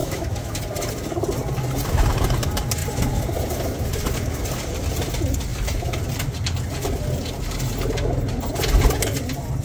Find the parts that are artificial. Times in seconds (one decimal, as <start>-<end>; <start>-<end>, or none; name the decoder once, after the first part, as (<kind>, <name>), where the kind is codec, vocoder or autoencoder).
0.0-0.6 (autoencoder, DAC-VAE)